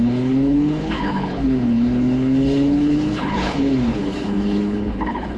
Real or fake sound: fake